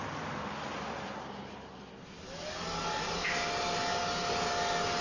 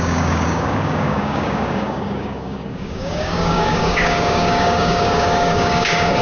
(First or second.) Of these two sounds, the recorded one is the first